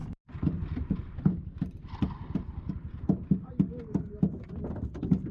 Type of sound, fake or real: real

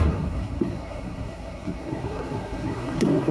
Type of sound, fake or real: fake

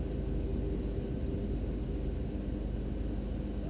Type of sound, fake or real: real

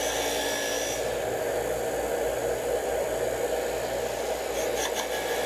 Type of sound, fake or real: real